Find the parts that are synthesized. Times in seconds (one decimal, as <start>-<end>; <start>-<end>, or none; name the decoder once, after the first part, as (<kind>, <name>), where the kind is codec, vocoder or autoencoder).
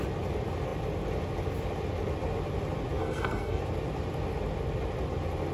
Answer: 3.0-3.6 (codec, SNAC)